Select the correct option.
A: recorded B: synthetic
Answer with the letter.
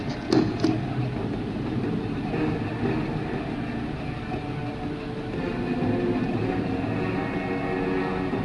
A